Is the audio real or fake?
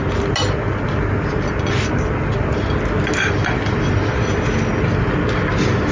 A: real